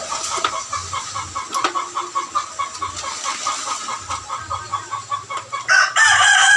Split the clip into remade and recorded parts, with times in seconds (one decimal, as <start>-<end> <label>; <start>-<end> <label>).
0.0-0.7 remade; 0.7-4.7 recorded; 4.7-6.6 remade